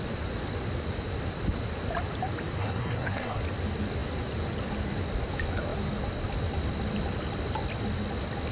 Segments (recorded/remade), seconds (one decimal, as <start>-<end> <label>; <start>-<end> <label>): 0.0-2.6 recorded; 2.6-3.4 remade; 3.4-8.5 recorded